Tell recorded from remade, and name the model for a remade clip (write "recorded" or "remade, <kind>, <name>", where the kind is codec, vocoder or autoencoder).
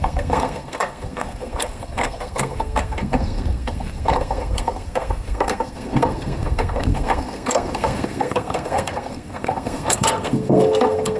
remade, codec, SNAC